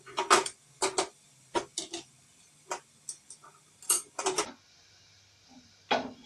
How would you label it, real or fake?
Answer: real